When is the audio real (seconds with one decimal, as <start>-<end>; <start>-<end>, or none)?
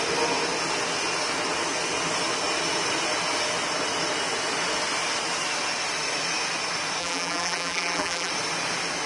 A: 0.0-7.0; 8.3-9.1